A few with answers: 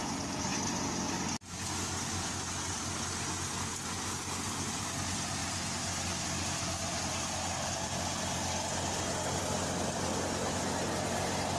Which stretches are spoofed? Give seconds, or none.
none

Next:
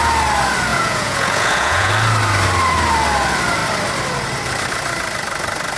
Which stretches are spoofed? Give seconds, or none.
0.7-1.9 (vocoder, Vocos)

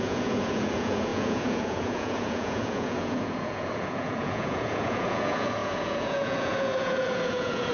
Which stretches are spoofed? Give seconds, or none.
0.0-7.7 (vocoder, Vocos)